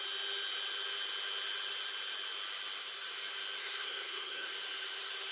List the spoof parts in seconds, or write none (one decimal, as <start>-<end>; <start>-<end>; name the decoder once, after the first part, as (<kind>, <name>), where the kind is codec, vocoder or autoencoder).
3.6-4.5 (codec, SNAC)